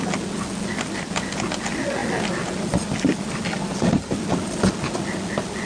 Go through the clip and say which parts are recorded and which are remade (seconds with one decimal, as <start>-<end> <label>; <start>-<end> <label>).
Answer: 0.0-5.7 recorded